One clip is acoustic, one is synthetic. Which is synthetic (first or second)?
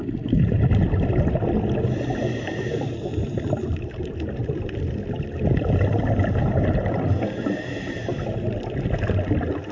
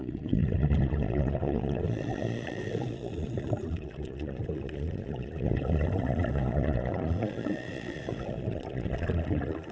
second